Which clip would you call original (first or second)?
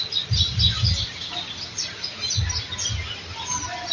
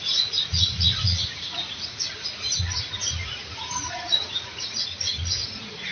first